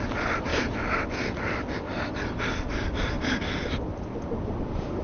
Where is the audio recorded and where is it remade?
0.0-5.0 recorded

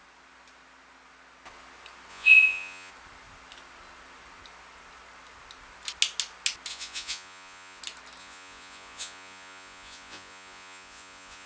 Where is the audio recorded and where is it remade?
0.0-2.1 recorded; 2.1-2.9 remade; 2.9-6.7 recorded; 6.7-7.8 remade; 7.8-8.2 recorded; 8.2-11.5 remade

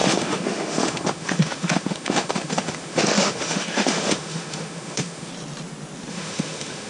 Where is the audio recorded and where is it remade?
0.0-5.3 remade; 5.3-6.1 recorded; 6.1-6.9 remade

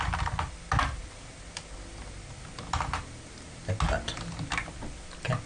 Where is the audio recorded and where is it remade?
0.0-5.5 recorded

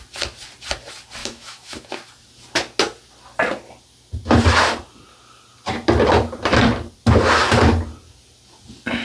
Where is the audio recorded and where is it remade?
0.0-1.2 recorded; 1.2-1.9 remade; 1.9-9.0 recorded

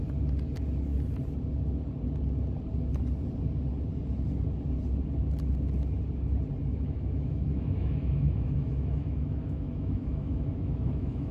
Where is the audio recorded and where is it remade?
0.0-6.7 recorded; 6.7-11.3 remade